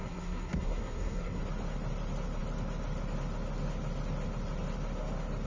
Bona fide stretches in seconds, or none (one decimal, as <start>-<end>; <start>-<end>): 1.4-5.5